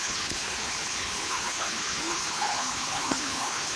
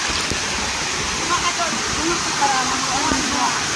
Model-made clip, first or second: first